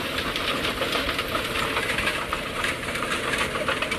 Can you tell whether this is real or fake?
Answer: fake